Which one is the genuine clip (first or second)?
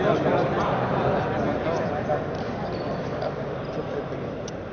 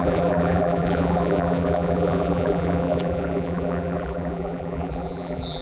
first